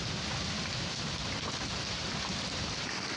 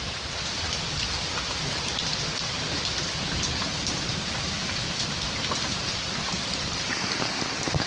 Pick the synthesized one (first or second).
second